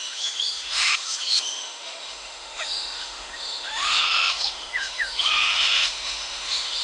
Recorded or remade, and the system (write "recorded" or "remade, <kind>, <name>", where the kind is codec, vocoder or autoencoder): remade, autoencoder, DAC-VAE